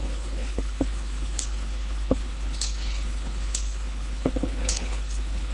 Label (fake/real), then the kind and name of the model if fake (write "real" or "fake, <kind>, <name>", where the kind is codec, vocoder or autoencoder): fake, codec, HILCodec